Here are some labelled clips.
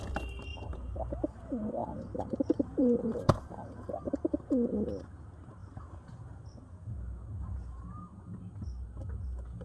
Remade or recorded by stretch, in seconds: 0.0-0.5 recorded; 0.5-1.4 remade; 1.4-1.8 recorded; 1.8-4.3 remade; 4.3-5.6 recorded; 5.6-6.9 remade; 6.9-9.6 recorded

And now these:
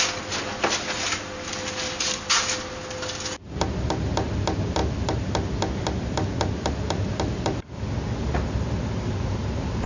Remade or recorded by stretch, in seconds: 0.0-9.9 recorded

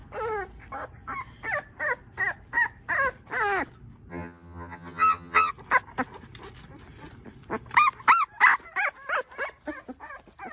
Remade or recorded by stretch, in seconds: 0.0-4.1 recorded; 4.1-5.5 remade; 5.5-10.5 recorded

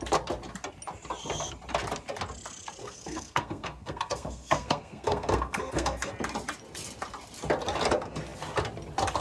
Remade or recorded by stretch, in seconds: 0.0-2.8 recorded; 2.8-6.1 remade; 6.1-9.2 recorded